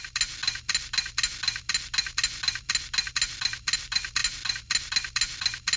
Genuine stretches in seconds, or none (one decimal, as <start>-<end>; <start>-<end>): 0.0-5.8